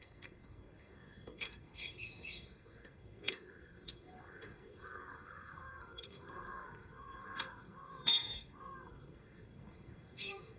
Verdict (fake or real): fake